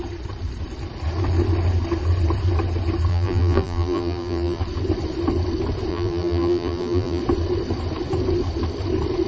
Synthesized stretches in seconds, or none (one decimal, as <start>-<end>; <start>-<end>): 3.1-4.6; 5.9-7.2